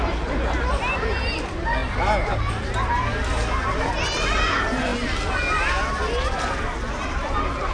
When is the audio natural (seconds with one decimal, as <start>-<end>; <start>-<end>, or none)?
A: 0.0-7.7